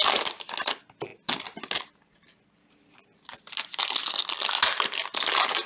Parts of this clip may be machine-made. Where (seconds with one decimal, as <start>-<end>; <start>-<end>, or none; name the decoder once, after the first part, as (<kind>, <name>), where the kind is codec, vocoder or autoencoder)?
none